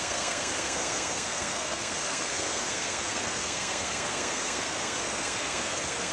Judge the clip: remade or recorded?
remade